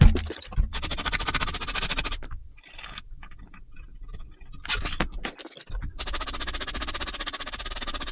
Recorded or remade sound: recorded